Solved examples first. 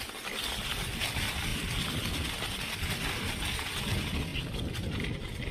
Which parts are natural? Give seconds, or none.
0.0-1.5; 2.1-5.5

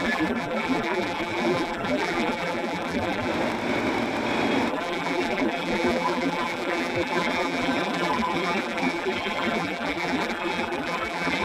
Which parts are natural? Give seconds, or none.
3.3-4.7

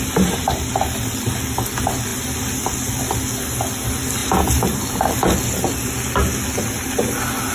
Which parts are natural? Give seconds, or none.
0.0-7.5

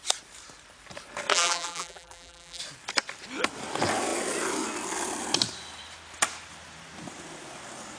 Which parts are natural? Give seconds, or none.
0.0-1.3; 2.6-8.0

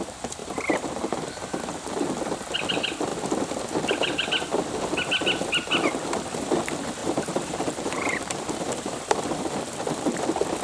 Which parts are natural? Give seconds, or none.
0.0-0.4; 1.0-7.0; 9.0-10.6

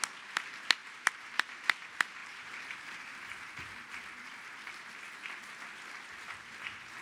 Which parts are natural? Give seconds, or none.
0.0-0.8; 1.4-2.2; 4.7-7.0